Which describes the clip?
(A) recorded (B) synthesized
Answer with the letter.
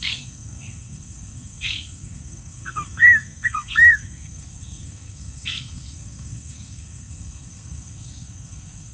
B